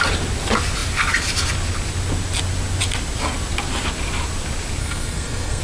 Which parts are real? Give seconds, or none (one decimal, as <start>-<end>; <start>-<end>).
0.0-4.8